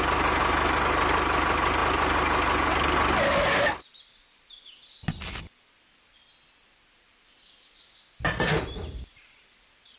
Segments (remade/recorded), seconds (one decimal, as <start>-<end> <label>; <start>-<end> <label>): 0.0-10.0 recorded